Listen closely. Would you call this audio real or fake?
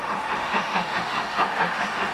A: fake